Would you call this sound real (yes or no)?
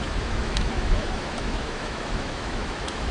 no